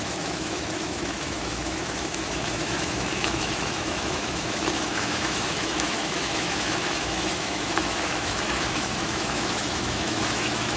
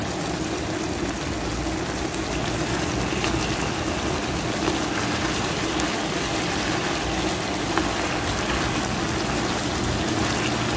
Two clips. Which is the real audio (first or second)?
second